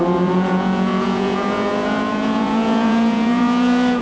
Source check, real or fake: fake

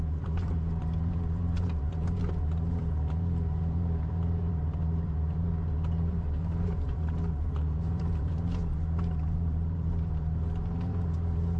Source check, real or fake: fake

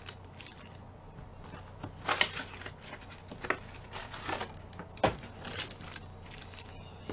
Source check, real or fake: real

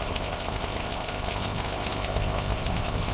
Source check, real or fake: fake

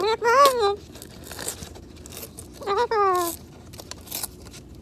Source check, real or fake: real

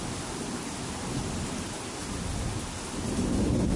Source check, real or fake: real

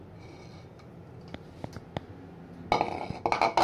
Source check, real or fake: real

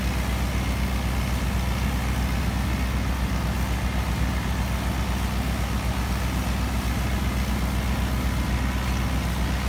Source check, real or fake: real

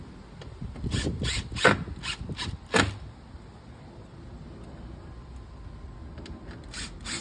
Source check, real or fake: real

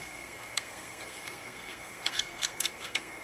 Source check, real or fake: fake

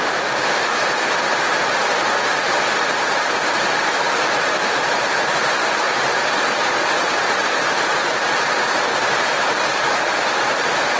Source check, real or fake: fake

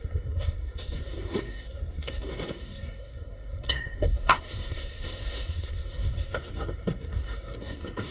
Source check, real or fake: fake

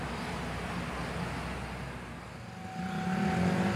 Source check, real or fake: real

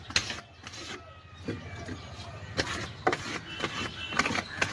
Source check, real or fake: real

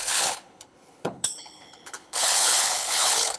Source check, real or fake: fake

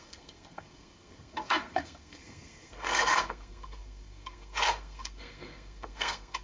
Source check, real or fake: fake